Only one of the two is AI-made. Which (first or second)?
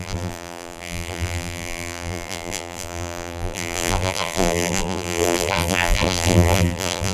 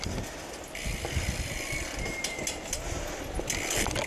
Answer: first